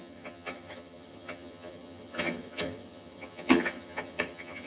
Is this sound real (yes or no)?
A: no